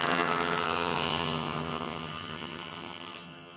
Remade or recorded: remade